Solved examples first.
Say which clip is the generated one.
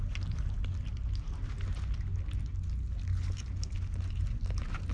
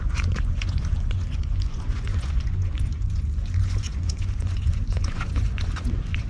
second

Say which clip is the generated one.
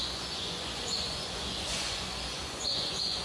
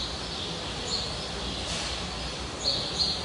first